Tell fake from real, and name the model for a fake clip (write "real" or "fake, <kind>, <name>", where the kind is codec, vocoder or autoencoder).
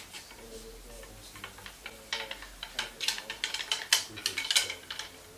real